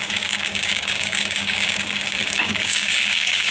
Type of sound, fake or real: fake